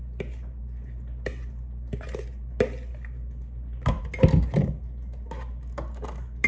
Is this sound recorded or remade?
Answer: recorded